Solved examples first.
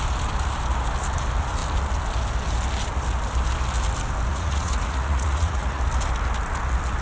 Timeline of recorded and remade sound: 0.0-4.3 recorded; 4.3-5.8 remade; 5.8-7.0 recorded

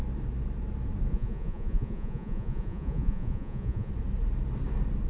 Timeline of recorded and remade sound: 0.0-1.1 recorded; 1.1-3.9 remade; 3.9-5.1 recorded

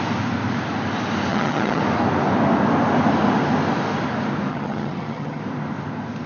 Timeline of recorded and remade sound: 0.0-1.3 recorded; 1.3-1.8 remade; 1.8-4.5 recorded; 4.5-5.4 remade; 5.4-6.3 recorded